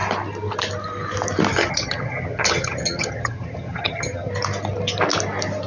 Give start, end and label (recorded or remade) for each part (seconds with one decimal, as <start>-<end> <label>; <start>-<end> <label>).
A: 0.0-1.5 recorded; 1.5-4.3 remade; 4.3-5.7 recorded